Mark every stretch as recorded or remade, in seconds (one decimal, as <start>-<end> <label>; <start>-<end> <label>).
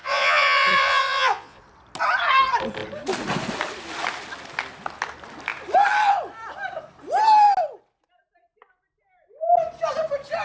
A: 0.0-1.6 remade; 1.6-10.4 recorded